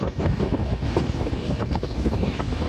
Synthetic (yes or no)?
yes